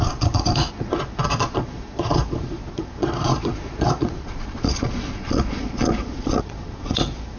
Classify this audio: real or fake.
fake